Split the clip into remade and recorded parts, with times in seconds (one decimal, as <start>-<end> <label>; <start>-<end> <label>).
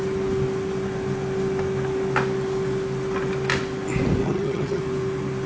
0.0-4.2 recorded; 4.2-4.8 remade; 4.8-5.5 recorded